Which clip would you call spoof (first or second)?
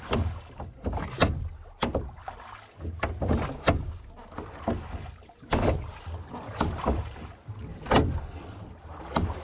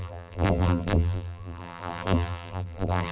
second